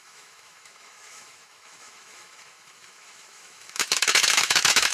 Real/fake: fake